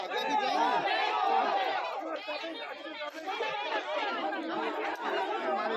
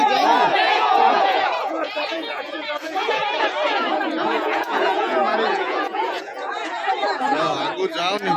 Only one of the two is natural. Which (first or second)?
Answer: first